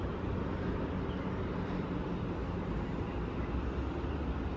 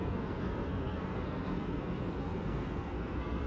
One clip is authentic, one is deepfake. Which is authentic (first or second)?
first